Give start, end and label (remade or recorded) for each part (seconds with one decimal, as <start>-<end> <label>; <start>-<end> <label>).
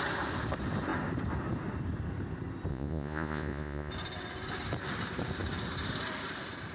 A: 0.0-2.7 recorded; 2.7-3.9 remade; 3.9-6.7 recorded